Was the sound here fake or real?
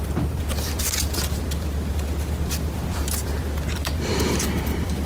fake